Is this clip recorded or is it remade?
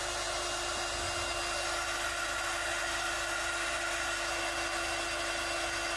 recorded